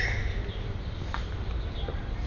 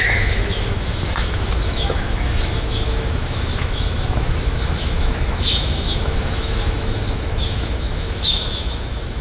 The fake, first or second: second